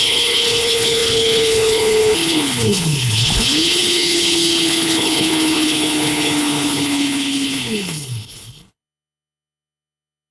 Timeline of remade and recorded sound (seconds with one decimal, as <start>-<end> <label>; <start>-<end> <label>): 0.0-10.3 remade